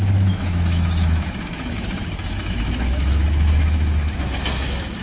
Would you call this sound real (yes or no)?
no